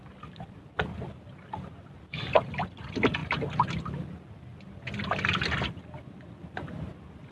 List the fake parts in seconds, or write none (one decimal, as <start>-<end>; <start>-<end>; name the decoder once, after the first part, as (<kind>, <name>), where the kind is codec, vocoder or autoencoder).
none